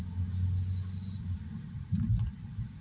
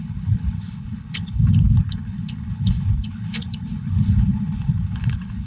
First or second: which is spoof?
second